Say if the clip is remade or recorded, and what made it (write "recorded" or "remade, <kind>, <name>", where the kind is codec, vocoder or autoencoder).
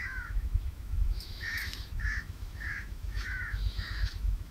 remade, autoencoder, DAC-VAE